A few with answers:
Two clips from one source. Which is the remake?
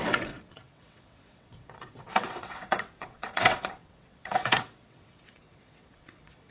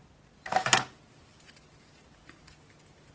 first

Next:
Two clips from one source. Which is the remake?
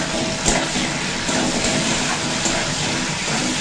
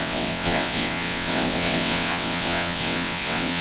second